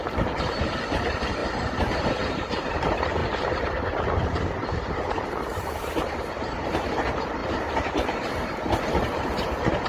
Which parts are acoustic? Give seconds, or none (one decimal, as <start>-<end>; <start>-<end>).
none